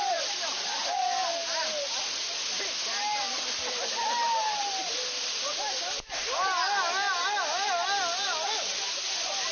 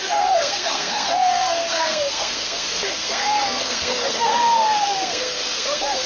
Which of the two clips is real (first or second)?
first